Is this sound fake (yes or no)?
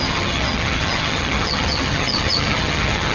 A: yes